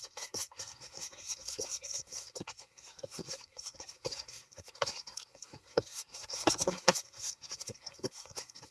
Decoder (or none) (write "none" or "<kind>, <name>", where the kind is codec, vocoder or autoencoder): codec, SNAC